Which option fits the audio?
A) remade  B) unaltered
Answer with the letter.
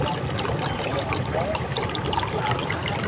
B